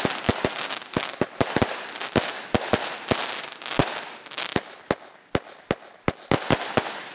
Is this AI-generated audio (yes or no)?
no